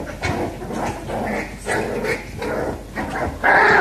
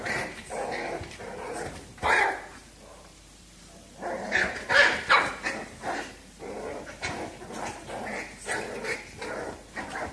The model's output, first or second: second